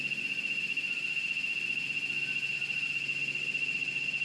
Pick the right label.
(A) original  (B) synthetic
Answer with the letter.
A